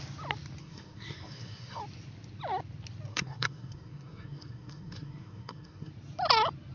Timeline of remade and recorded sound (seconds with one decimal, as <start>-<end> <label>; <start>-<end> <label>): 0.0-0.6 recorded; 0.6-1.8 remade; 1.8-3.1 recorded; 3.1-5.9 remade; 5.9-6.7 recorded